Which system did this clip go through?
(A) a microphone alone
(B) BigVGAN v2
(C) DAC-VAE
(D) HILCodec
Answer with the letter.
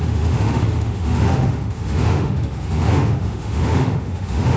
C